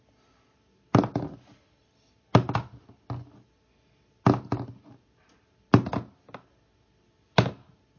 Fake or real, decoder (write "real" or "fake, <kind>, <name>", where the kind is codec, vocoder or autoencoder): real